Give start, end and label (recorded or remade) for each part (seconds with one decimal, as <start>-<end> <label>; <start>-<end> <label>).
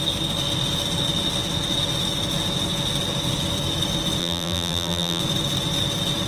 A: 0.0-4.2 recorded; 4.2-5.2 remade; 5.2-6.3 recorded